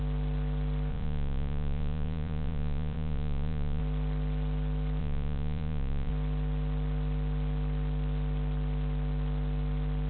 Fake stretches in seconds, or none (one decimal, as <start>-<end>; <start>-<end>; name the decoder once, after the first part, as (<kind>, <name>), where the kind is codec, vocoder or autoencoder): 0.9-3.8 (vocoder, Vocos); 5.0-6.1